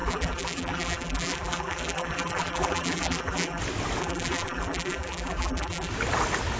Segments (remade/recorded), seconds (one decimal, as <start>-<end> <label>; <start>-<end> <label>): 0.0-3.6 remade; 3.6-4.0 recorded; 4.0-5.9 remade; 5.9-6.6 recorded